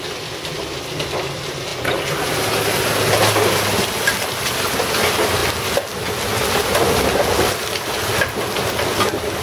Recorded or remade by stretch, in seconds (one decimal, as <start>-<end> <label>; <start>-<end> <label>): 0.0-9.4 recorded